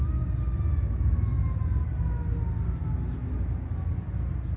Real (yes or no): yes